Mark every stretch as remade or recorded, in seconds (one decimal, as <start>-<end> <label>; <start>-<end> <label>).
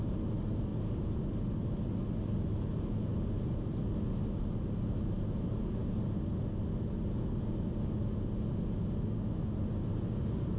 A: 0.0-10.6 recorded